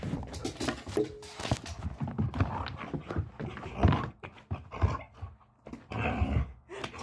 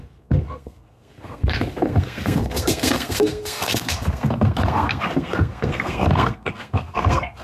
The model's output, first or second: second